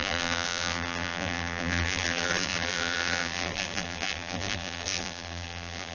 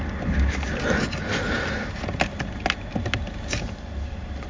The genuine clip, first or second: second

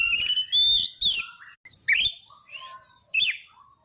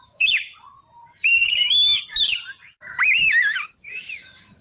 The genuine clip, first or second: first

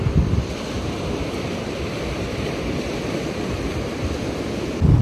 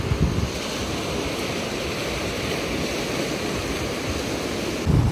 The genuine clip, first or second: second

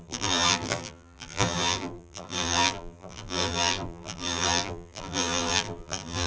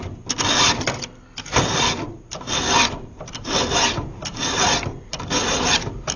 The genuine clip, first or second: second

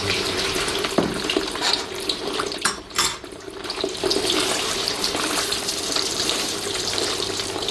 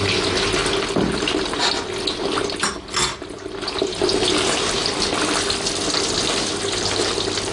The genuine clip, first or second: second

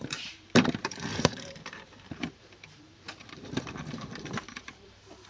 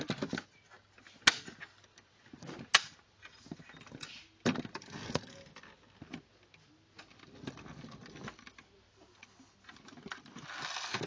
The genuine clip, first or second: second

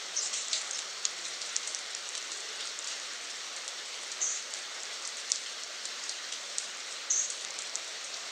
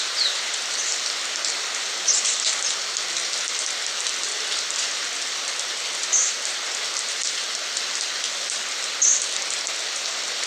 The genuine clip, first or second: second